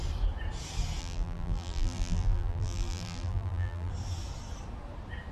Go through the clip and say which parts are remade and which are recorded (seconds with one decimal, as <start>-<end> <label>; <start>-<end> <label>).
0.0-1.0 recorded; 1.0-3.9 remade; 3.9-5.3 recorded